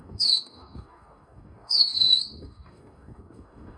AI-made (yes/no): yes